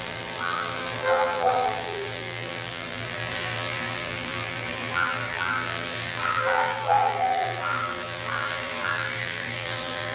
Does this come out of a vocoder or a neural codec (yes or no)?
yes